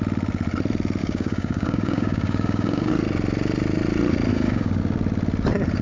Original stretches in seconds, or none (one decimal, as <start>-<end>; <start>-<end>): 0.0-1.0; 2.9-4.3; 4.8-5.8